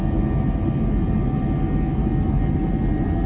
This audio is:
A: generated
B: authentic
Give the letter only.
B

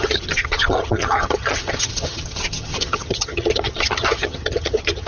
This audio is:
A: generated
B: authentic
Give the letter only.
A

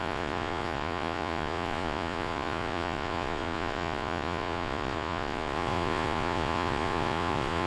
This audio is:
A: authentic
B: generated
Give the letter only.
B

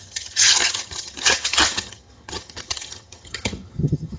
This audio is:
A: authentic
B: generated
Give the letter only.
B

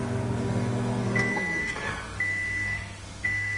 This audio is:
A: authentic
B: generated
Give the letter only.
B